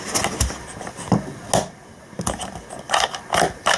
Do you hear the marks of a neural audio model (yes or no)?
no